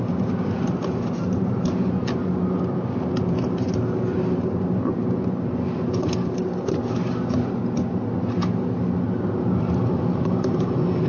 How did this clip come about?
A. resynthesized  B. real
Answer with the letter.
B